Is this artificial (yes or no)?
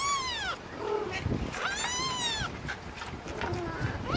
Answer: no